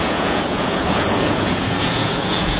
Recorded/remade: remade